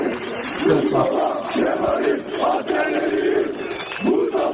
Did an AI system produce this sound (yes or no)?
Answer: no